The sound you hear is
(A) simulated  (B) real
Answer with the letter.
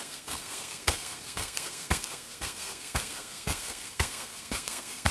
A